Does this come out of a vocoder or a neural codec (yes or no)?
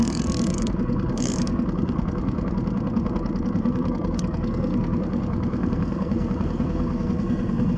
yes